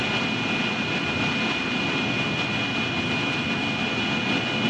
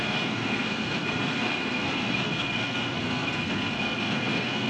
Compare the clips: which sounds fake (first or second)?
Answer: second